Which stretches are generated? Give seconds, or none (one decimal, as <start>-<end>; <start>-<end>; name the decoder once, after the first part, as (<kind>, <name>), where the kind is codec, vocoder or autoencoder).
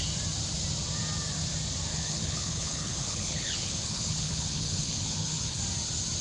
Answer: 1.9-5.6 (codec, HILCodec)